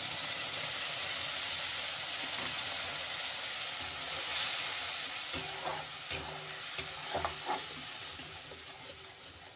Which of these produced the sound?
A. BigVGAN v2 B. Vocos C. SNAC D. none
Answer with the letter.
D